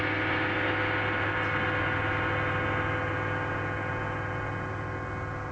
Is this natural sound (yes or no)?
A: yes